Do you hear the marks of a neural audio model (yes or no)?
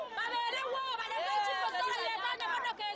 no